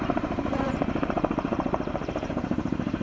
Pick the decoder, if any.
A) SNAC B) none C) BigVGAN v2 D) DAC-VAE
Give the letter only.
C